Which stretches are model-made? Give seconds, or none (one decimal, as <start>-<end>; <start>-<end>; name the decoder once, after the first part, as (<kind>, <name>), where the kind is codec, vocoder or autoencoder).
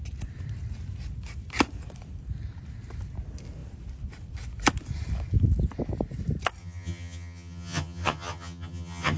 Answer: 6.6-9.2 (vocoder, HiFi-GAN)